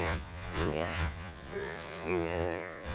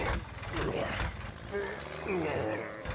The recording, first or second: second